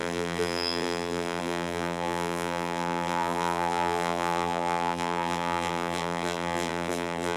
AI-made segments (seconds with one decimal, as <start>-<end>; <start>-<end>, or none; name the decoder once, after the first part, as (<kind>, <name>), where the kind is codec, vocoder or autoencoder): 0.0-7.4 (vocoder, BigVGAN v2)